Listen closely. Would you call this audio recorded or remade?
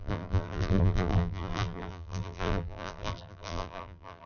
remade